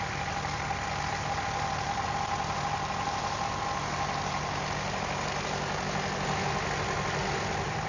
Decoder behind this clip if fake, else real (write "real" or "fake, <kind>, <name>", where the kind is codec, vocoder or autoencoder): real